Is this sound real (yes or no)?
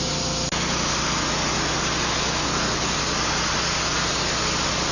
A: yes